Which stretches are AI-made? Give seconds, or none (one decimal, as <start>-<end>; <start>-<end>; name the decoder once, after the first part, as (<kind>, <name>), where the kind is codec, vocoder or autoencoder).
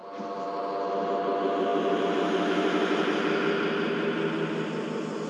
none